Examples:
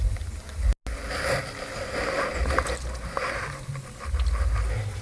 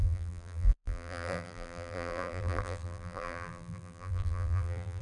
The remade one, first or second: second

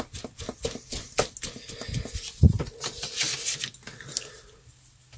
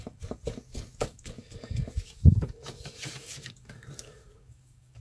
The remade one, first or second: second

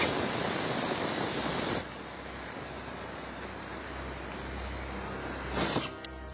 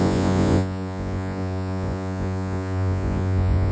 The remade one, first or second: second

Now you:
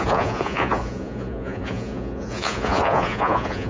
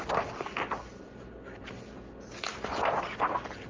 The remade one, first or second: first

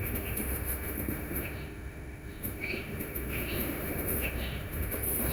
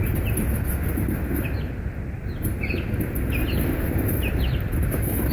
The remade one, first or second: first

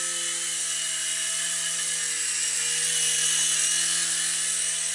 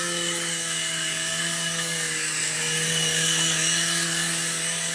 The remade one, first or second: second